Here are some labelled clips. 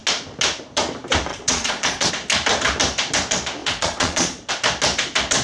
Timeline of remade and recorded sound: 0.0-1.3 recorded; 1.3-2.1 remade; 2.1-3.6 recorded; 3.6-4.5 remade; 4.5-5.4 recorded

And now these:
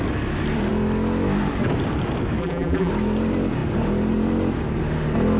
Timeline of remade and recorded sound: 0.0-2.4 recorded; 2.4-2.9 remade; 2.9-5.4 recorded